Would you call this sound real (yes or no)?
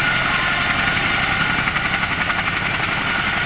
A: yes